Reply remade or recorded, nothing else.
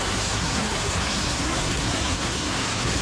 remade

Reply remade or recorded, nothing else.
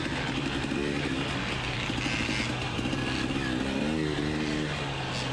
recorded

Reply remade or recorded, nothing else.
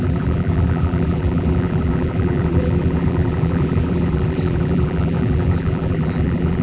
remade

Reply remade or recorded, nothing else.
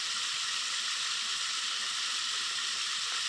recorded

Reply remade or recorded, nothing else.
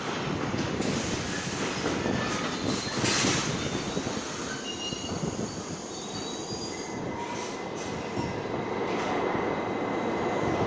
recorded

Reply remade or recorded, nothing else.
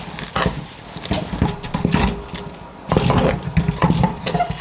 recorded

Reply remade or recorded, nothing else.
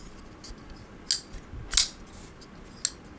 recorded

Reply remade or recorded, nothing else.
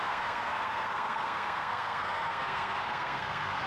remade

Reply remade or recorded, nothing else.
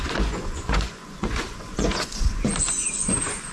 remade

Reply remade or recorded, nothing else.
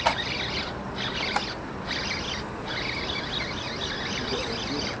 recorded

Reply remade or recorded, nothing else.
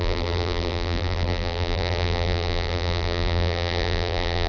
remade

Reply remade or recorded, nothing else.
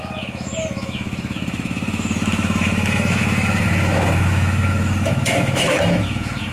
remade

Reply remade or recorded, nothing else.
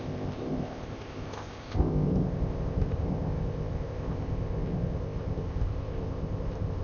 remade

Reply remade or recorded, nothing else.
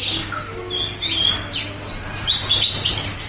recorded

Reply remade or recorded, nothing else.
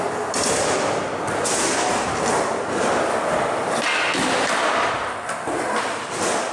recorded